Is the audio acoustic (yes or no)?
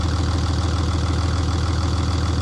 yes